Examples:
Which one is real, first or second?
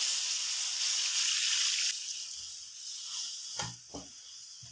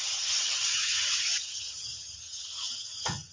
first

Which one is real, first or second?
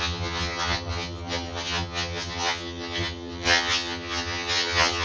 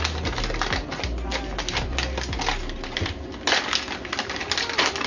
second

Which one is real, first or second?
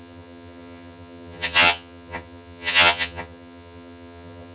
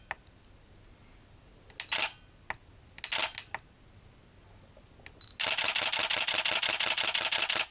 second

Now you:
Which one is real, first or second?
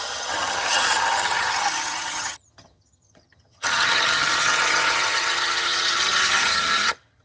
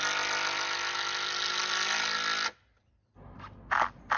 second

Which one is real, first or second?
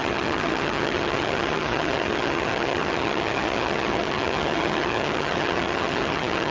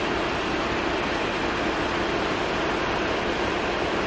second